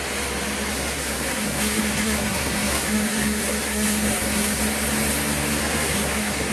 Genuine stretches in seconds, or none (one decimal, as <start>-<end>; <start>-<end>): 0.0-0.7; 4.6-5.6